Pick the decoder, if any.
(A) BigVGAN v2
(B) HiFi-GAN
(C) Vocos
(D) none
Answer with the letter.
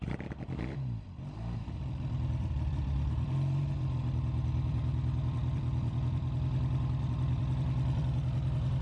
A